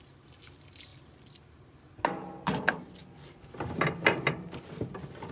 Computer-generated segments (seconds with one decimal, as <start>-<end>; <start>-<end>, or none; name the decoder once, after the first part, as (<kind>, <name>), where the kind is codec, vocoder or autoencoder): none